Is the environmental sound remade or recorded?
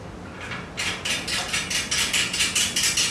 recorded